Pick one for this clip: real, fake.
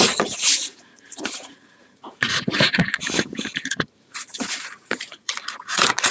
fake